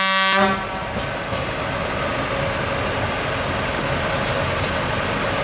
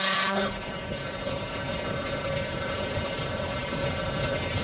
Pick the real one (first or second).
first